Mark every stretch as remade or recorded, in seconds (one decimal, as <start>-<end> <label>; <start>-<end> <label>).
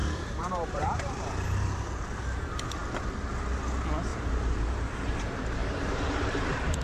0.0-1.9 remade; 1.9-4.1 recorded; 4.1-5.1 remade; 5.1-5.6 recorded; 5.6-6.8 remade